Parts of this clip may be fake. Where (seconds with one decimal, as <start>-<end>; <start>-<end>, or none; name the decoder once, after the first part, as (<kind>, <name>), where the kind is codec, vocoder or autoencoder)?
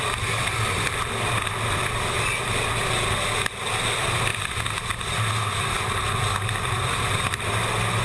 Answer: none